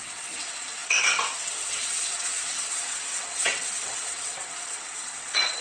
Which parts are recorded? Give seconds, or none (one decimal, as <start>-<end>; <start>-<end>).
none